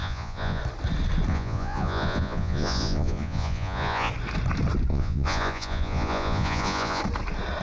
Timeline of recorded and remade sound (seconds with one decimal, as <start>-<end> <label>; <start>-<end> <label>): 0.0-0.6 remade; 0.6-1.3 recorded; 1.3-4.1 remade; 4.1-4.9 recorded; 4.9-7.0 remade; 7.0-7.6 recorded